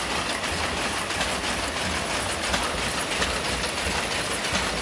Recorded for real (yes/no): yes